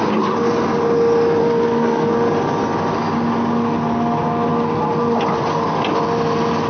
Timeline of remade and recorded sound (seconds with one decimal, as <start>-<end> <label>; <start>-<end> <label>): 0.0-1.4 recorded; 1.4-2.1 remade; 2.1-6.7 recorded